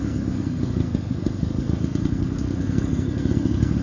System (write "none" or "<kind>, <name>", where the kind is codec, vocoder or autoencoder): codec, SNAC